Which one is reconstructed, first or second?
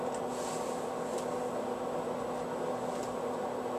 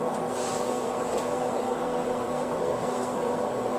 second